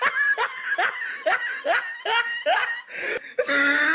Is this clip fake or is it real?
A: real